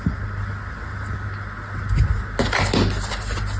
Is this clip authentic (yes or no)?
yes